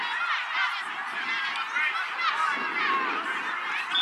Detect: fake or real real